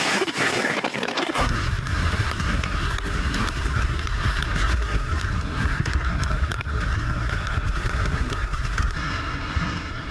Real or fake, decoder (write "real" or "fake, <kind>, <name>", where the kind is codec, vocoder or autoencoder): fake, codec, SNAC